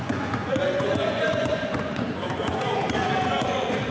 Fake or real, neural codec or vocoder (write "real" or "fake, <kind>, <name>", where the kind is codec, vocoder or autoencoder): fake, vocoder, Vocos